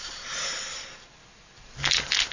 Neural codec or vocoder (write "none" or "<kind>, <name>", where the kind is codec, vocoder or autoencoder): none